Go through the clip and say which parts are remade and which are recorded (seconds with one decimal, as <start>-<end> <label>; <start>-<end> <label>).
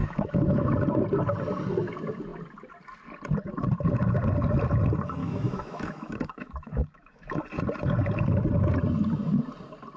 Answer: 0.0-0.7 remade; 0.7-5.2 recorded; 5.2-7.4 remade; 7.4-10.0 recorded